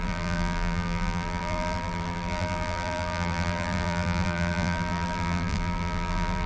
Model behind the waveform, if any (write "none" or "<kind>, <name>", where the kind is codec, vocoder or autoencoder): vocoder, BigVGAN v2